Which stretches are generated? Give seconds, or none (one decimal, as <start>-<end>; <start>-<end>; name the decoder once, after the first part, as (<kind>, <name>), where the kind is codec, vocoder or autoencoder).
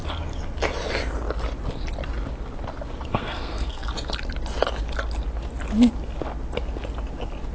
3.1-3.9 (codec, SNAC)